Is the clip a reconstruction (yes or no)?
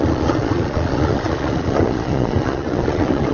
yes